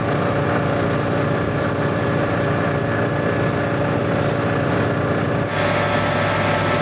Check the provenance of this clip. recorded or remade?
recorded